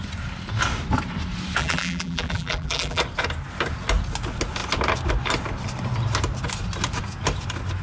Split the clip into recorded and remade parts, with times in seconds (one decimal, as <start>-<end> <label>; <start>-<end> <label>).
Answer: 0.0-1.6 recorded; 1.6-3.0 remade; 3.0-7.8 recorded